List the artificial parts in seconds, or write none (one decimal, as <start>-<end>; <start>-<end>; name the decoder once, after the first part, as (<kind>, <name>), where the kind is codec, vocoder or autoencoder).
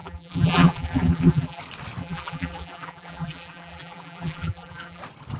0.0-1.6 (vocoder, BigVGAN v2); 2.0-5.0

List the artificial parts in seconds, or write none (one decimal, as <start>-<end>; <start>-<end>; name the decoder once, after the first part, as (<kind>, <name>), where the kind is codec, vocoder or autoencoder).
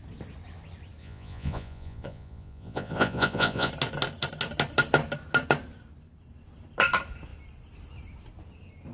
1.0-3.7 (vocoder, Vocos)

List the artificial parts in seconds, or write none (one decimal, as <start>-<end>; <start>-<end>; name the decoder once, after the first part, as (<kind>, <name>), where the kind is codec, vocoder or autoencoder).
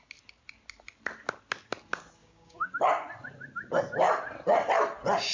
2.2-2.7 (codec, DAC)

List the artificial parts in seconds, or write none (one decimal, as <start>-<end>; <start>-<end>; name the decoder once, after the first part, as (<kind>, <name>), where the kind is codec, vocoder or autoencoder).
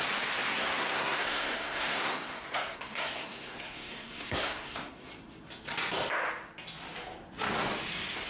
0.5-5.1 (codec, SNAC)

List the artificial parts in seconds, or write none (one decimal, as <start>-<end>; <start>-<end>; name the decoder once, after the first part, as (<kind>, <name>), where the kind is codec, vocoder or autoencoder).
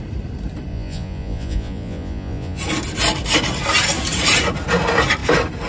0.7-2.6 (vocoder, Vocos)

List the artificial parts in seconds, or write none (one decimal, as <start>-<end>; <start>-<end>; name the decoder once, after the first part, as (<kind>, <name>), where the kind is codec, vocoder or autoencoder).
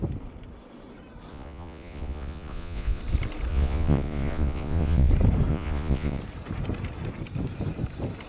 1.3-3.0 (vocoder, Vocos); 3.5-5.1; 5.5-6.2